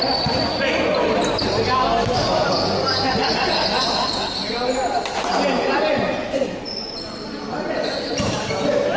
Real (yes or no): yes